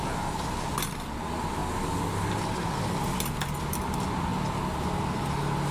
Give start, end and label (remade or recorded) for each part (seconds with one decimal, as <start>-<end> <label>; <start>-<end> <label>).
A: 0.0-5.7 recorded